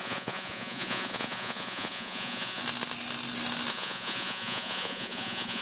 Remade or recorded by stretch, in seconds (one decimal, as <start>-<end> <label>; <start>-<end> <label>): 0.0-2.6 remade; 2.6-3.7 recorded; 3.7-5.6 remade